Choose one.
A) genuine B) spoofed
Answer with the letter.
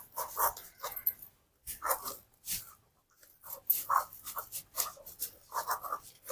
A